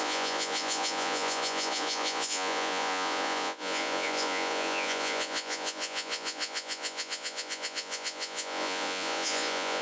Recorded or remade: remade